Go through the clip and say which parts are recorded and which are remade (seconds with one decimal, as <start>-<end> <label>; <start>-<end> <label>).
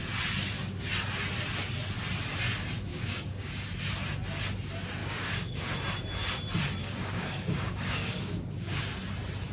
0.0-2.9 recorded; 2.9-3.5 remade; 3.5-5.0 recorded; 5.0-5.6 remade; 5.6-6.8 recorded; 6.8-8.8 remade; 8.8-9.5 recorded